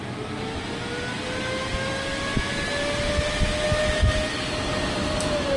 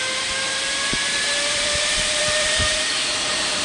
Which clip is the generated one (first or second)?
second